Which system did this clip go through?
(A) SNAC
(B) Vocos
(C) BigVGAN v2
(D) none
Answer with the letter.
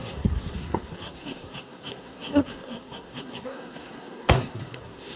A